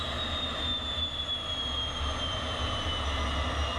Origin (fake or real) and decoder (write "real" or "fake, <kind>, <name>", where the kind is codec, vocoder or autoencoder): real